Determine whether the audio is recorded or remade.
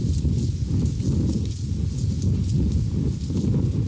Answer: recorded